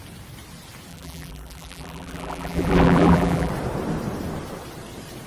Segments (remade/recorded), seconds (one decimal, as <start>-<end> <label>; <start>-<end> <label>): 0.0-0.9 recorded; 0.9-3.5 remade; 3.5-5.3 recorded